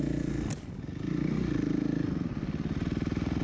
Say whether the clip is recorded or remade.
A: recorded